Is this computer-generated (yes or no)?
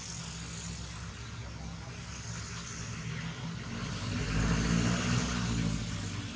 no